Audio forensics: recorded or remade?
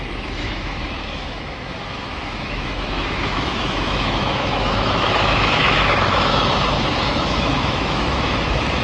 remade